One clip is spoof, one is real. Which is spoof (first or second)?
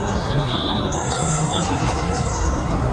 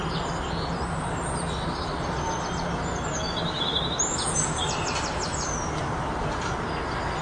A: first